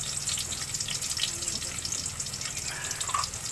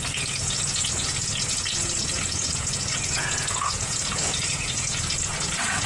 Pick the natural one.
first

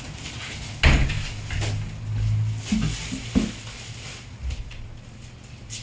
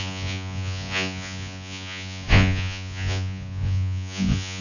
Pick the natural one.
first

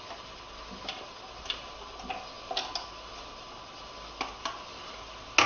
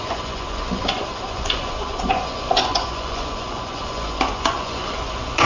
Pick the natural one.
first